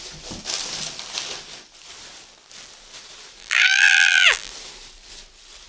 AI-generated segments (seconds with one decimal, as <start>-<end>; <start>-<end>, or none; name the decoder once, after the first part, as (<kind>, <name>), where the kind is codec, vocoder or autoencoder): 3.4-4.5 (vocoder, BigVGAN v2)